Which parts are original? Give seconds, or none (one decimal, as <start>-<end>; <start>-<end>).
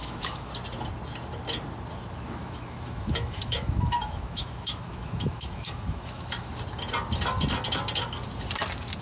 0.5-2.4; 6.5-9.0